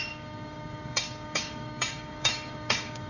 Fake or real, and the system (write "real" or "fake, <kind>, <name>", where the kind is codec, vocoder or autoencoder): fake, codec, DAC